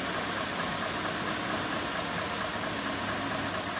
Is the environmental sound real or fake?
real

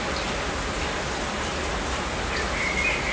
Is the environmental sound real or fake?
real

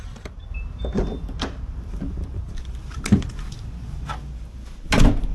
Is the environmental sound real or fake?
real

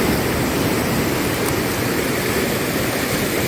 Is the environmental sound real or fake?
fake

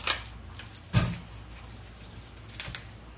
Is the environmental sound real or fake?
real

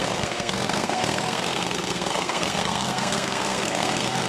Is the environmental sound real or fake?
fake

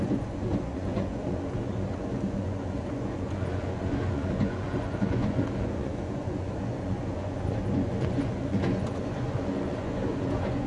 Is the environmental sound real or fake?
fake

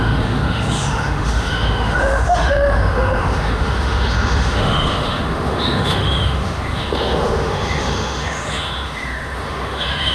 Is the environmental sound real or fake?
fake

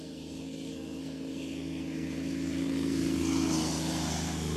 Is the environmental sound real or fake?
fake